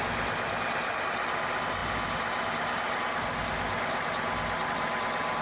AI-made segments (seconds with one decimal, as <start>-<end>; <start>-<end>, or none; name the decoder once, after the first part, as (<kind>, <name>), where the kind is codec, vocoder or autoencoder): none